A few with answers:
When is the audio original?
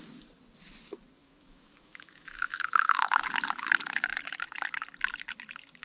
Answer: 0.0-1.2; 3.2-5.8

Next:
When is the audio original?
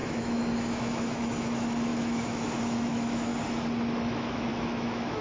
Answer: 3.3-3.9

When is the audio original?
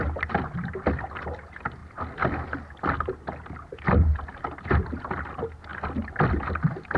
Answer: 0.0-7.0